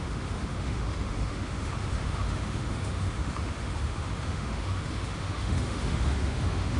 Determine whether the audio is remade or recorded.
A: remade